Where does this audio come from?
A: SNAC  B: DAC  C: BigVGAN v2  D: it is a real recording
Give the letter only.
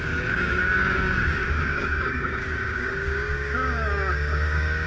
B